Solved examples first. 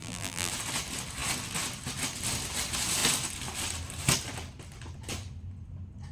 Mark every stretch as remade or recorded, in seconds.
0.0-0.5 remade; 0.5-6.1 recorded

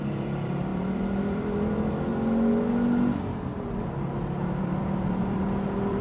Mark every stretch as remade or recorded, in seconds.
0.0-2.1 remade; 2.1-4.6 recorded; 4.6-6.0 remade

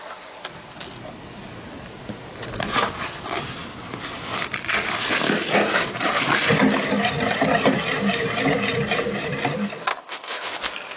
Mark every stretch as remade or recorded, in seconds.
0.0-9.9 recorded; 9.9-10.6 remade; 10.6-11.0 recorded

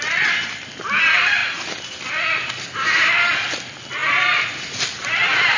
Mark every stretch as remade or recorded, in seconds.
0.0-5.6 recorded